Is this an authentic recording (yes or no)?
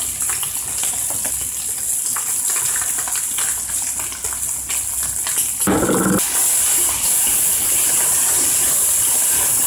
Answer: yes